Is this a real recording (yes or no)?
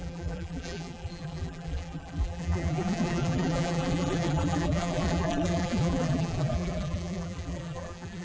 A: no